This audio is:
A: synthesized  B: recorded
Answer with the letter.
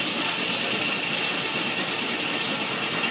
B